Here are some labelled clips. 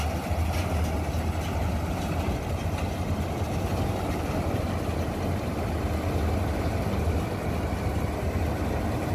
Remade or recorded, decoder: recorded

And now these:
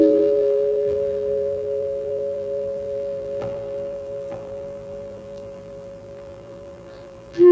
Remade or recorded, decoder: remade, vocoder, BigVGAN v2